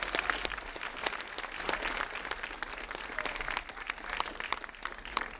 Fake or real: real